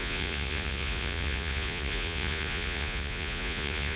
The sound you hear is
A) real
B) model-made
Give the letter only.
B